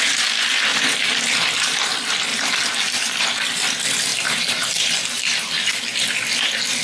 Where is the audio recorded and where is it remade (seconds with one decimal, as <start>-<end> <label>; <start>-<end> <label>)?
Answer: 0.0-0.7 recorded; 0.7-1.8 remade; 1.8-2.3 recorded; 2.3-3.2 remade; 3.2-4.1 recorded; 4.1-6.0 remade; 6.0-6.8 recorded